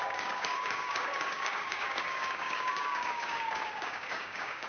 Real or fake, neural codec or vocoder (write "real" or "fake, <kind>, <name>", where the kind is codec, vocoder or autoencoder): fake, codec, DAC